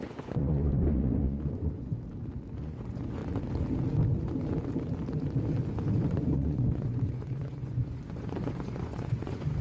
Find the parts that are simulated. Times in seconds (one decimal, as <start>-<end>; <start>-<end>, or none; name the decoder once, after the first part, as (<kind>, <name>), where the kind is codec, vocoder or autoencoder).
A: 0.0-1.9 (vocoder, Vocos); 2.6-3.2; 6.0-9.6